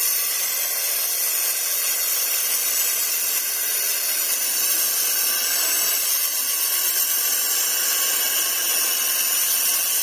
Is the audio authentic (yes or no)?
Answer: yes